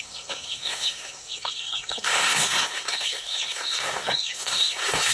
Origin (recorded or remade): remade